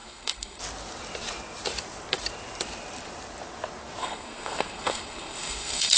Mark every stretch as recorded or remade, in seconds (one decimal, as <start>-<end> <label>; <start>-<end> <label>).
0.0-0.6 remade; 0.6-4.0 recorded; 4.0-6.0 remade